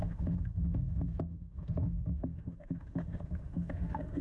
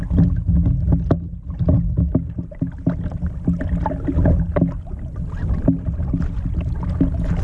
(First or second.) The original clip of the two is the second